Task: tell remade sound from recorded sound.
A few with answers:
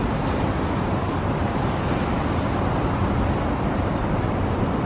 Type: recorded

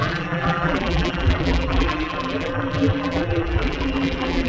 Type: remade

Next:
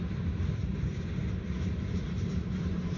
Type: remade